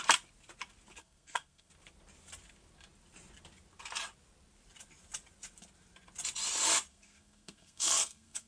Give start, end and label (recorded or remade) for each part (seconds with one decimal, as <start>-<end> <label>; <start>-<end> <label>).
0.0-1.0 recorded; 1.0-1.7 remade; 1.7-6.9 recorded; 6.9-8.5 remade